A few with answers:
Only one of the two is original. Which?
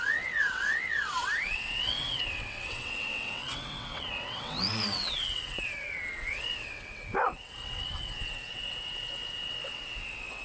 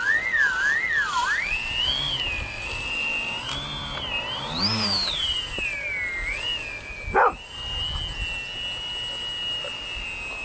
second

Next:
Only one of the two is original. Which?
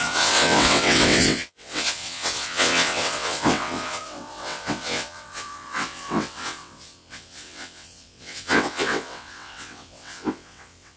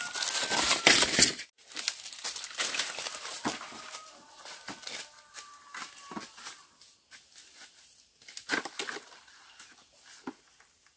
second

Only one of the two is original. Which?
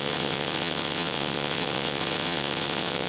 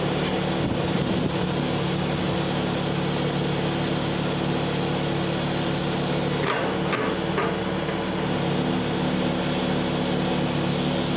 second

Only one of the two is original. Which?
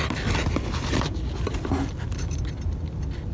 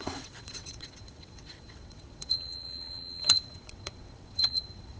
first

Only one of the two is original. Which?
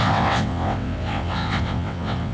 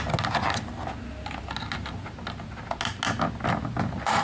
second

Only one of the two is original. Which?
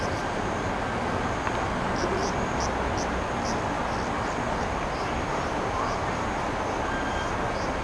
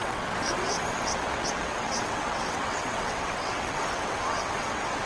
first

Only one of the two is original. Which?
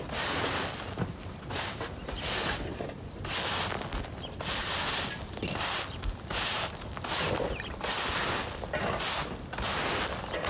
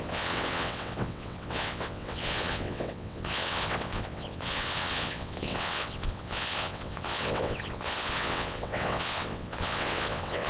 first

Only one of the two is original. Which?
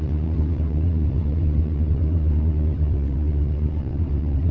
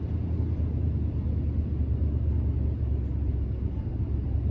second